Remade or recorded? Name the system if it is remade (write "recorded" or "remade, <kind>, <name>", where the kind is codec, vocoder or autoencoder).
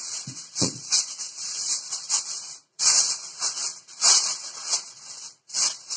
remade, vocoder, Vocos